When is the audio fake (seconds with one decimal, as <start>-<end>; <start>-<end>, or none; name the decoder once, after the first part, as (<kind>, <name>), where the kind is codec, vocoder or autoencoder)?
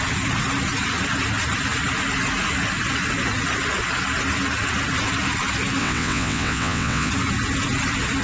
5.8-7.1 (vocoder, WaveNeXt)